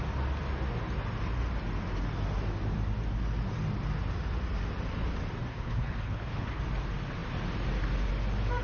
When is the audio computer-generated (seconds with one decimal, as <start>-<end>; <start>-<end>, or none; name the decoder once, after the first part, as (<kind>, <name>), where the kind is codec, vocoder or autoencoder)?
5.5-6.6 (codec, HILCodec)